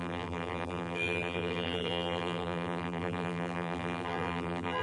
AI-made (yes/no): yes